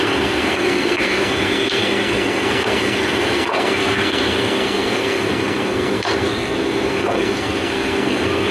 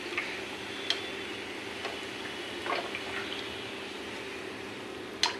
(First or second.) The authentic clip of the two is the second